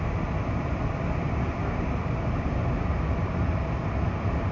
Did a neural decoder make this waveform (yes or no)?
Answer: yes